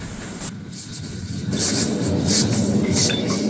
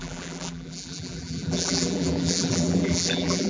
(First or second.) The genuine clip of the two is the first